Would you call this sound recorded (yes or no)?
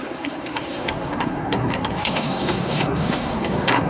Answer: no